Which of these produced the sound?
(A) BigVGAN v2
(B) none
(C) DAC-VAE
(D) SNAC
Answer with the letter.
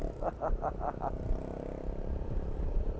A